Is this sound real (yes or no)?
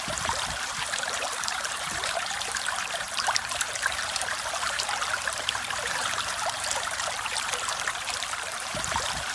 no